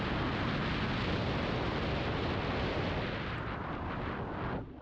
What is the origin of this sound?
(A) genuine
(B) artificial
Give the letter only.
A